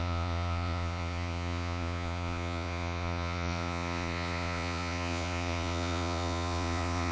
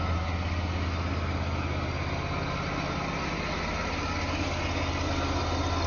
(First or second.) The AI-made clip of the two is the first